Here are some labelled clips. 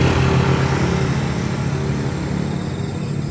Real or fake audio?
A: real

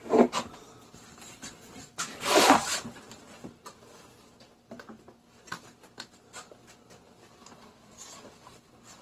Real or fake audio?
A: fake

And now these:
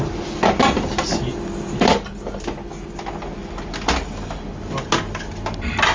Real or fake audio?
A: real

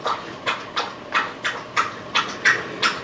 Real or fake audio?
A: real